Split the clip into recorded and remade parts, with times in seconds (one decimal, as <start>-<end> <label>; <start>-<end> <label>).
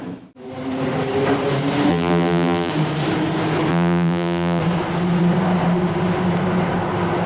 0.0-1.9 recorded; 1.9-2.7 remade; 2.7-3.7 recorded; 3.7-4.6 remade; 4.6-7.3 recorded